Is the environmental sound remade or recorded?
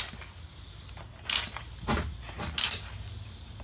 recorded